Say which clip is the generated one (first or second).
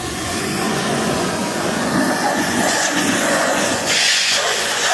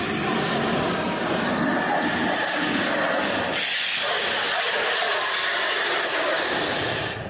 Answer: first